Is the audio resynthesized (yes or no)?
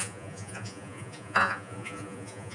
yes